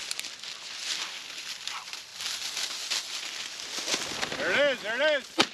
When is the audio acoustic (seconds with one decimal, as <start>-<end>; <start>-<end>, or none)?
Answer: 0.0-5.5